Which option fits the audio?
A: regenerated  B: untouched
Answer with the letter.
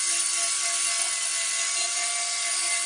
B